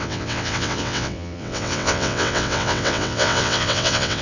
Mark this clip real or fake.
fake